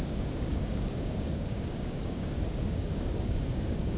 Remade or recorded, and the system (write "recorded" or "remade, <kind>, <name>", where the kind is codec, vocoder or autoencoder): remade, codec, DAC